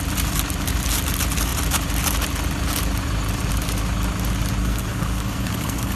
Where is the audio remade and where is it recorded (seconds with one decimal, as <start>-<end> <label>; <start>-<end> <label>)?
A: 0.0-4.6 recorded; 4.6-6.0 remade